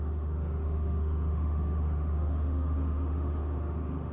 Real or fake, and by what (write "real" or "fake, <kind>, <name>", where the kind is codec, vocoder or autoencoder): fake, autoencoder, DAC-VAE